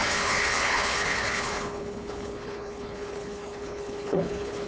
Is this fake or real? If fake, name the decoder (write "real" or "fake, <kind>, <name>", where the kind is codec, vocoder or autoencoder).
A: fake, codec, HILCodec